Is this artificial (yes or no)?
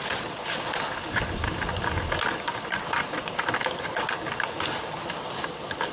no